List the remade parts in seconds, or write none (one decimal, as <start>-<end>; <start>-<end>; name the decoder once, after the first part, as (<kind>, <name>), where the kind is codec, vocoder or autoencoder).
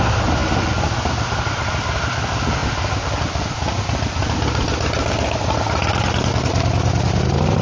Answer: none